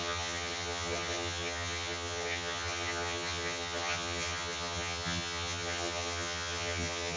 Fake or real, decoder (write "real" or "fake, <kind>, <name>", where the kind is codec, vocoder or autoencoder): fake, vocoder, HiFi-GAN